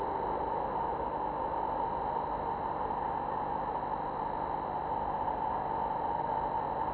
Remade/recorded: recorded